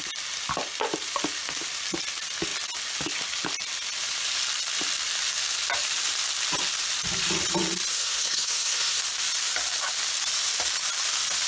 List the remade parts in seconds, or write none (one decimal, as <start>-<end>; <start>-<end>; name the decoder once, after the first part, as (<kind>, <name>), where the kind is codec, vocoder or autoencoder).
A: 7.9-9.0 (codec, SNAC)